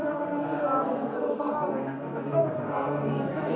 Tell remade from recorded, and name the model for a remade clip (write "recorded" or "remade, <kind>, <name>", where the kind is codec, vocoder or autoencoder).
remade, codec, SNAC